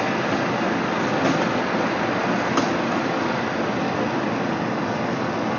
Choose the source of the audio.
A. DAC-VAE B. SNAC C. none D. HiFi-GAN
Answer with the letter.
C